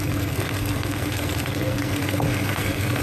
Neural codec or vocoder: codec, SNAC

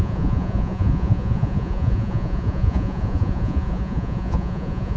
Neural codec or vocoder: vocoder, Vocos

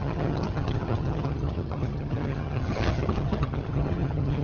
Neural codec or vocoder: vocoder, HiFi-GAN